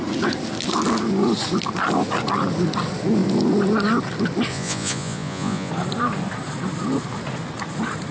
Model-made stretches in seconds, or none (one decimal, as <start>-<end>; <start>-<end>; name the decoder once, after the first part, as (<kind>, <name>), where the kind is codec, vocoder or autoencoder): 4.5-5.7 (vocoder, Vocos)